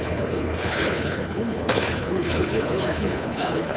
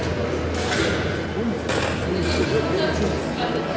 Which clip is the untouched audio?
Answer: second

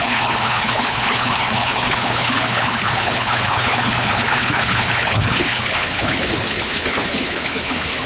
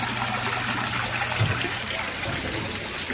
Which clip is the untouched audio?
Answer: second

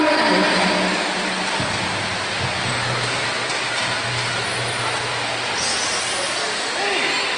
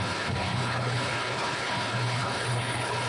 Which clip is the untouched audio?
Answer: first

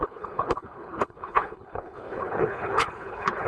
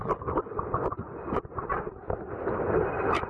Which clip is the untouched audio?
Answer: second